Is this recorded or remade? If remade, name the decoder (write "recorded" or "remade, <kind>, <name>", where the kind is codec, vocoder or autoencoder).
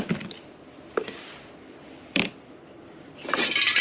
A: remade, vocoder, BigVGAN v2